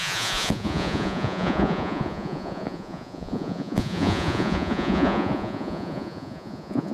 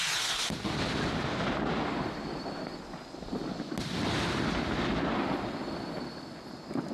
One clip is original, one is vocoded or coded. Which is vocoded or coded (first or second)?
first